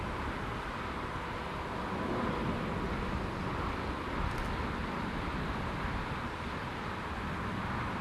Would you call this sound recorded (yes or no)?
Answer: yes